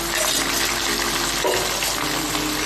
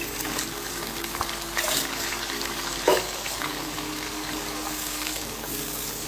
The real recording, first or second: first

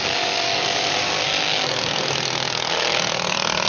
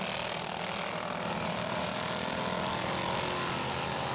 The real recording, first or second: second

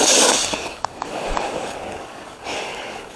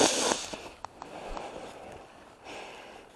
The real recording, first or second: second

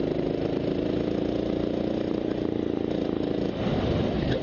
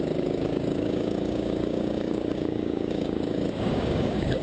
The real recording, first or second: first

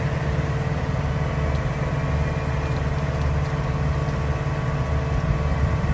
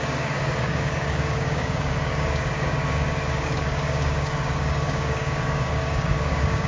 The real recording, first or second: first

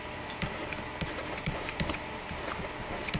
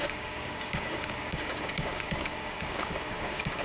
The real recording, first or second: first